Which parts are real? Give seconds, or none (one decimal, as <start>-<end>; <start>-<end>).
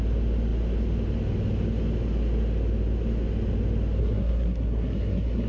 0.0-4.0